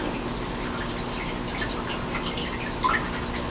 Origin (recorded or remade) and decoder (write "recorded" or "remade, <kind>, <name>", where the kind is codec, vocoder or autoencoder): recorded